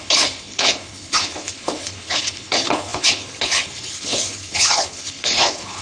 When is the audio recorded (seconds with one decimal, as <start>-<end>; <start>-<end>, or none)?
none